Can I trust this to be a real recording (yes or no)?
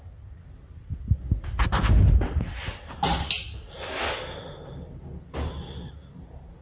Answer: yes